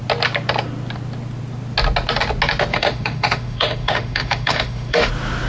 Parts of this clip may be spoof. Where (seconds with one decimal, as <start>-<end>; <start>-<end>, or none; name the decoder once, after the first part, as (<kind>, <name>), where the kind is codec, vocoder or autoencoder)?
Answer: 2.7-5.1 (autoencoder, DAC-VAE)